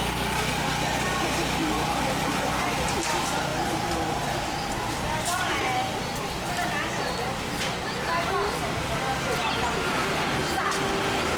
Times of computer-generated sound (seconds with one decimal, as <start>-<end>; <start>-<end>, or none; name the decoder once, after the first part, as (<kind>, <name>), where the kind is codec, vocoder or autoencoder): 1.6-2.1 (vocoder, BigVGAN v2)